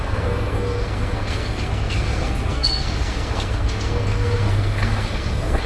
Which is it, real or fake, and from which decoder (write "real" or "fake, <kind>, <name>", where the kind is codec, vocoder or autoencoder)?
fake, codec, SNAC